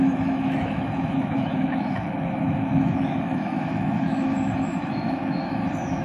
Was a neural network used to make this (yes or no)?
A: yes